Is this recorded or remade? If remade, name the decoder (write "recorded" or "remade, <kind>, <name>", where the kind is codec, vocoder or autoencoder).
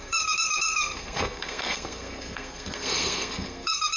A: remade, codec, SNAC